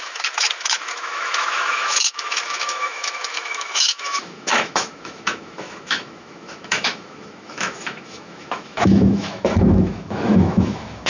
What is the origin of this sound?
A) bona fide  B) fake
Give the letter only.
B